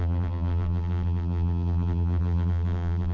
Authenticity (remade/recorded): remade